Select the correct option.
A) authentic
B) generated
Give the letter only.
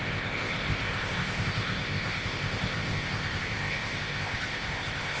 B